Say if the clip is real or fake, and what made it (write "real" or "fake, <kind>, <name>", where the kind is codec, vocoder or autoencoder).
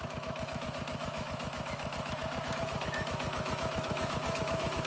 fake, autoencoder, DAC-VAE